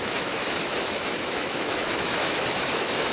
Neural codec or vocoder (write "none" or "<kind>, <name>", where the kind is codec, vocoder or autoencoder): autoencoder, DAC-VAE